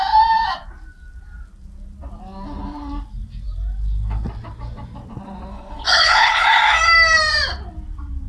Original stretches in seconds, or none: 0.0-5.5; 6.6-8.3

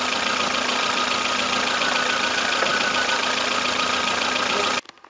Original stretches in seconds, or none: 0.0-5.1